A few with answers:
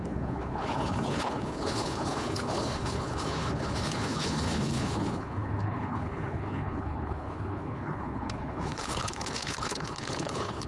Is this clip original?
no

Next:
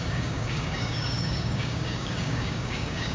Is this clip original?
no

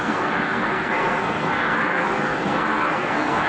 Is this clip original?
no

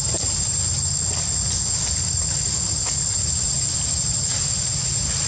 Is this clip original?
yes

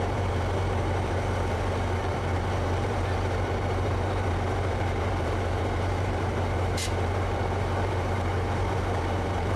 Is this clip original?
no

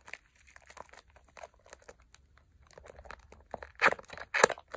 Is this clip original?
yes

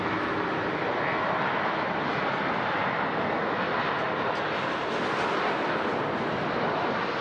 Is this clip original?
yes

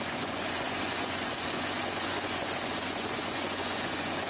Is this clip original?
no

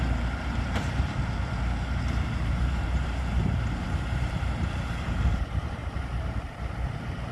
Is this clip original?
no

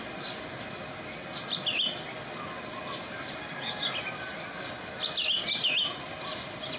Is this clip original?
yes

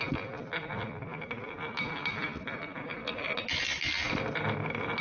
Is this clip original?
yes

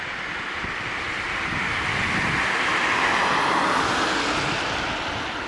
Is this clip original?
yes